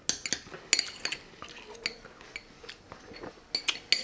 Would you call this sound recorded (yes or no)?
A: yes